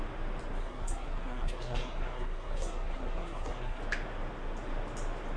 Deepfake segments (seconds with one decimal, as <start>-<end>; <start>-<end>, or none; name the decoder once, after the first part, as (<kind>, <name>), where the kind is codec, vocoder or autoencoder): 0.6-3.8 (codec, SNAC)